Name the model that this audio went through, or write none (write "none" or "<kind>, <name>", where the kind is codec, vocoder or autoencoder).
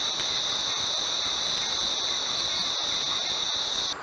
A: none